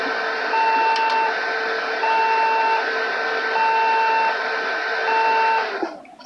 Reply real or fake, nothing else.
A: real